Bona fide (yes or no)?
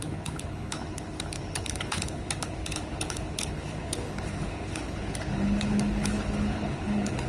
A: no